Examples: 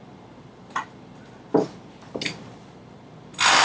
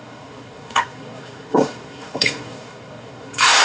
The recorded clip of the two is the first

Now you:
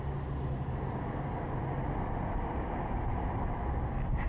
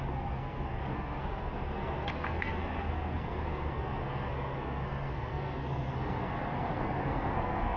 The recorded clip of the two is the first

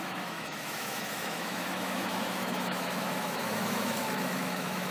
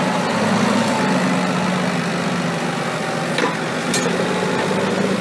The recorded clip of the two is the second